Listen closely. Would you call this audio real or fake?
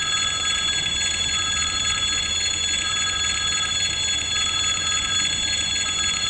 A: fake